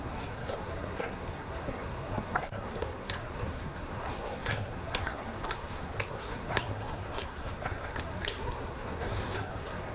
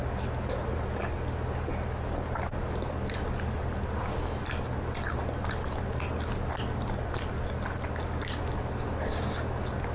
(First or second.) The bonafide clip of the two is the second